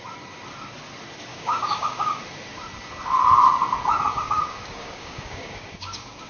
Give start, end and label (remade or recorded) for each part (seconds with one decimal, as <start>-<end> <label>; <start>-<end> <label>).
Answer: 0.0-1.3 recorded; 1.3-2.2 remade; 2.2-4.1 recorded; 4.1-6.3 remade